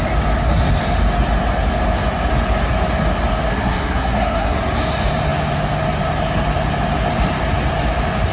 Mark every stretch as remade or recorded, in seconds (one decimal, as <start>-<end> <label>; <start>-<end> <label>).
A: 0.0-3.5 recorded; 3.5-4.6 remade; 4.6-8.3 recorded